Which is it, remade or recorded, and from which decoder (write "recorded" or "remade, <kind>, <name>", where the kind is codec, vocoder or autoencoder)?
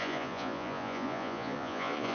remade, vocoder, Vocos